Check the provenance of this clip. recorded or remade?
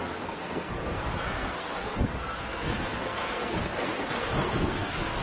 remade